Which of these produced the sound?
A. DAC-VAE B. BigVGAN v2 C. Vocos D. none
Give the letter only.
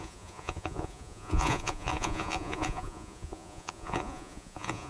C